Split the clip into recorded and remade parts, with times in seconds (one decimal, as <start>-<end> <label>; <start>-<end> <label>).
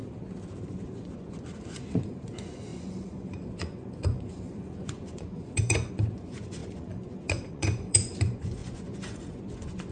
0.0-0.6 recorded; 0.6-9.9 remade